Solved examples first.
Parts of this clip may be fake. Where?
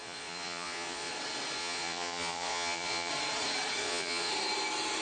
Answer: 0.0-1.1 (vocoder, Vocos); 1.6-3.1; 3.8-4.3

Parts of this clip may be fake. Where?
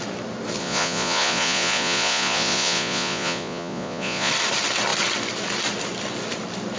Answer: 0.6-4.3 (vocoder, Vocos)